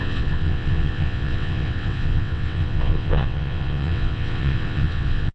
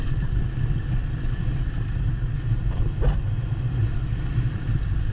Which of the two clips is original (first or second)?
second